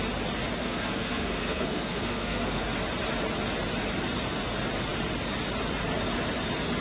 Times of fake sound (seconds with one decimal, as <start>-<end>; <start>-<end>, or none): 0.6-2.6